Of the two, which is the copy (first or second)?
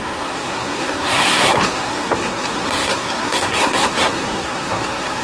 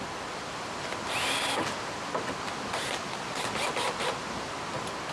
first